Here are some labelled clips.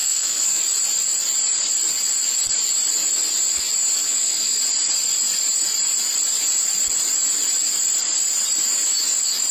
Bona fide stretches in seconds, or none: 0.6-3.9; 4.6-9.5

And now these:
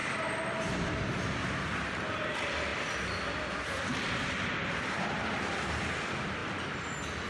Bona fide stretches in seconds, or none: 0.0-7.3

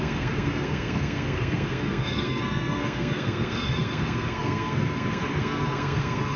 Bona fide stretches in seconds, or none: none

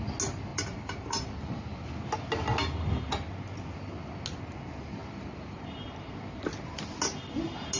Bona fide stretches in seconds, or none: 0.0-0.5; 1.6-5.0; 6.8-7.8

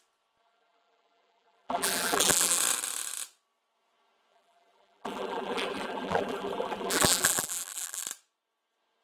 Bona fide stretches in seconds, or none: 0.0-0.4; 2.6-4.3; 8.0-9.0

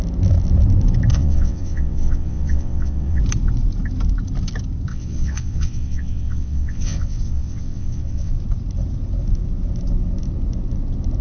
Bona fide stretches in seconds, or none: 0.0-1.1; 3.2-4.9; 8.3-11.2